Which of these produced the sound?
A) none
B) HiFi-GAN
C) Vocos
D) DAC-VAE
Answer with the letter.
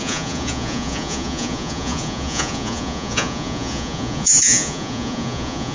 C